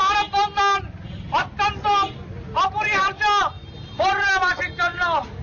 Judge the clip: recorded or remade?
recorded